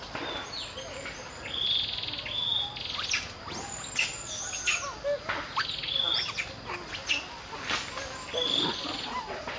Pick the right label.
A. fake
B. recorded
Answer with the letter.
B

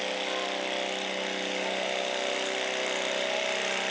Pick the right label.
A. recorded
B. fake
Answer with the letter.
A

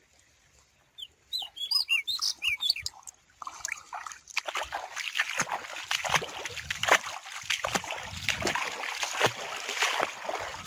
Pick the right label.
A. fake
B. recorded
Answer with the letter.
B